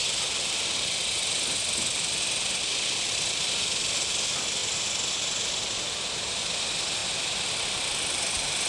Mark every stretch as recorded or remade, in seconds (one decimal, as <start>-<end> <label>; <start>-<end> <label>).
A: 0.0-4.6 remade; 4.6-5.5 recorded; 5.5-8.7 remade